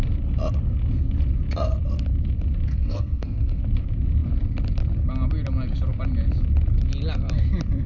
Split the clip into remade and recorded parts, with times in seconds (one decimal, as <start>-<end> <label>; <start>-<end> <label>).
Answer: 0.0-2.7 recorded; 2.7-3.6 remade; 3.6-7.9 recorded